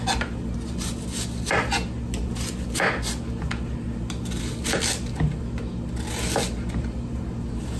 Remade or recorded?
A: recorded